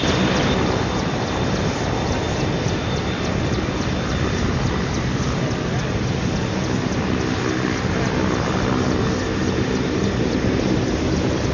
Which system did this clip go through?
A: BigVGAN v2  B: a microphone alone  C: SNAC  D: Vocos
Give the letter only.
B